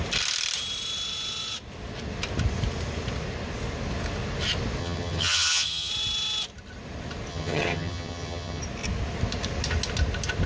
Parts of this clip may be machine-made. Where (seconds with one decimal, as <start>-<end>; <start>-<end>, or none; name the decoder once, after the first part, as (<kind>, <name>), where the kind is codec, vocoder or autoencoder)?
4.8-5.9 (vocoder, HiFi-GAN); 7.3-8.6